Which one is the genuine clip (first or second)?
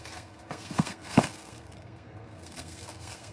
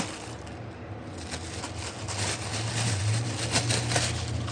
second